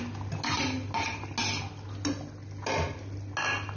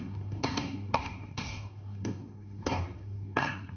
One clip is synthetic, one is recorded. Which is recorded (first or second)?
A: first